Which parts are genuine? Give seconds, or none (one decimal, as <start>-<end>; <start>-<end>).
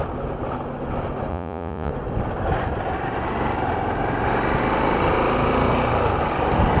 0.0-1.3; 1.9-6.8